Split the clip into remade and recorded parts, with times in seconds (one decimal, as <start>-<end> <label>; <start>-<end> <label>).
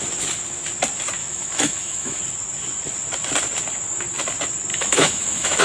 0.0-1.2 recorded; 1.2-2.2 remade; 2.2-4.7 recorded; 4.7-5.6 remade